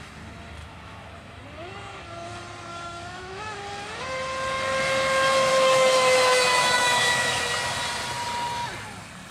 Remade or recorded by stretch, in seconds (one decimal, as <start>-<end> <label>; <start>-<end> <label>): 0.0-0.6 recorded; 0.6-1.4 remade; 1.4-2.7 recorded; 2.7-3.6 remade; 3.6-5.5 recorded; 5.5-7.4 remade; 7.4-9.3 recorded